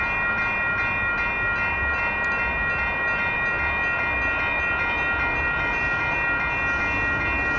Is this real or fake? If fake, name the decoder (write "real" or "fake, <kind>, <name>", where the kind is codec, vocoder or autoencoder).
real